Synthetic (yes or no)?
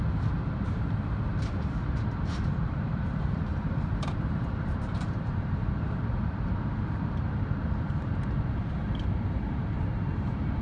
yes